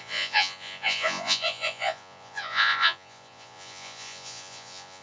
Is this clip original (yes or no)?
no